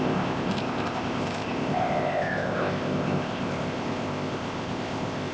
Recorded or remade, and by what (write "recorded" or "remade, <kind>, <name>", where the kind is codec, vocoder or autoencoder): remade, codec, ZipCodec